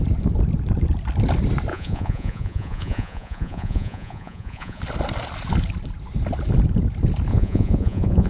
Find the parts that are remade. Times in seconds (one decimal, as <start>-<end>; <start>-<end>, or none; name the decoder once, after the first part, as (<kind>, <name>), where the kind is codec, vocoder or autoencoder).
1.7-4.8 (vocoder, Vocos); 7.3-8.3